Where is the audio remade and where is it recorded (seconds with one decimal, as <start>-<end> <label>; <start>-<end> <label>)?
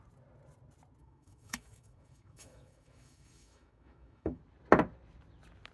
0.0-1.0 recorded; 1.0-4.4 remade; 4.4-5.7 recorded